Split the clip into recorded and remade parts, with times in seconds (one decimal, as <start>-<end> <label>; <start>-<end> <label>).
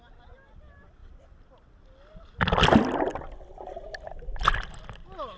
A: 0.0-5.4 recorded